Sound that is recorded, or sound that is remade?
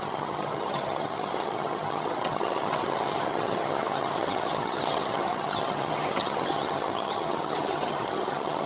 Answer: remade